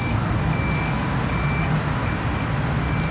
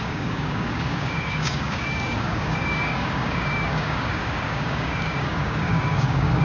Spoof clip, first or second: second